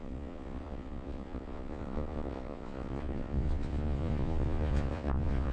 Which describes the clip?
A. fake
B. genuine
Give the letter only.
A